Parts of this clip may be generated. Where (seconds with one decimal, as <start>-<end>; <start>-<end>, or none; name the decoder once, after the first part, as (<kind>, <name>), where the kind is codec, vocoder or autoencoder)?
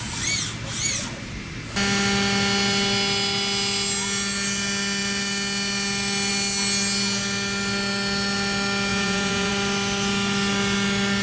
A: 8.9-9.5 (vocoder, Vocos)